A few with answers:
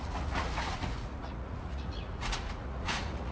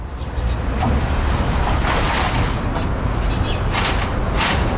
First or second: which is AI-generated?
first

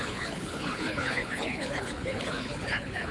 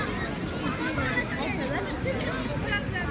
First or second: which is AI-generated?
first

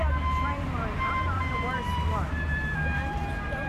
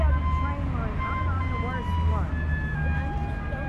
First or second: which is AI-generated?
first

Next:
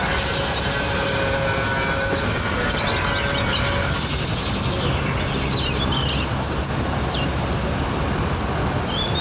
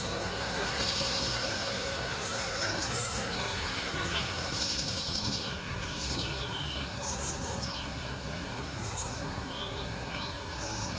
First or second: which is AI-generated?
second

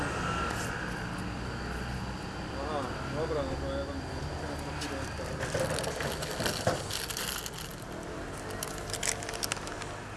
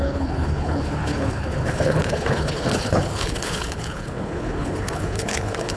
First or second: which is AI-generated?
second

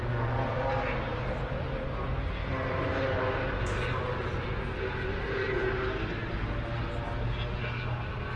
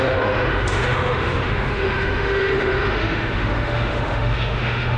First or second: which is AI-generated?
second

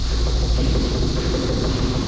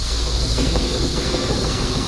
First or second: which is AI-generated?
second